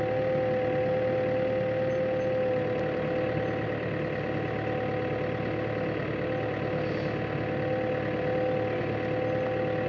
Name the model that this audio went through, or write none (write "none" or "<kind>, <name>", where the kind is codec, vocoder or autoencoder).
none